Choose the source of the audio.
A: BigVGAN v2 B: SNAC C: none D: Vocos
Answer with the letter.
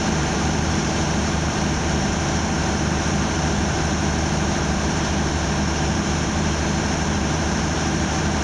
A